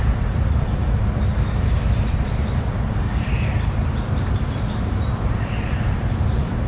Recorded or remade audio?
remade